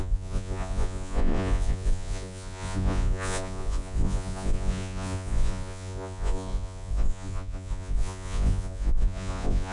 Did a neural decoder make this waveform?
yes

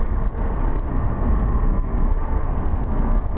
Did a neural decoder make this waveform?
yes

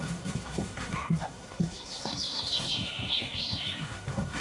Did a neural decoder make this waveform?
yes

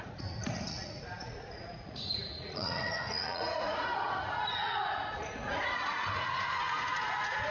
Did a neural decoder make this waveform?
yes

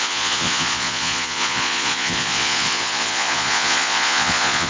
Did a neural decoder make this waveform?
yes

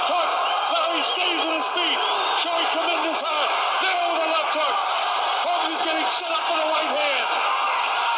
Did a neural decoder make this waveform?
no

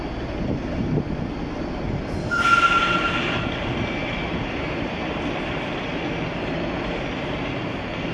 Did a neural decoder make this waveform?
no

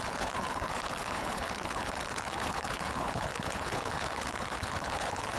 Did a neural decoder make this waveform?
yes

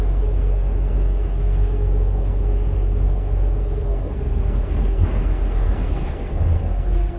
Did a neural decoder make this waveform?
yes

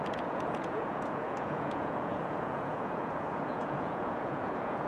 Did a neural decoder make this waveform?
yes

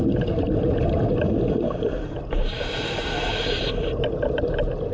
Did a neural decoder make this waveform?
no